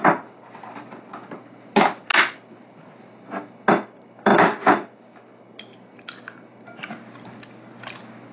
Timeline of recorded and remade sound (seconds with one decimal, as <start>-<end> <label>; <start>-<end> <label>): 0.0-8.3 recorded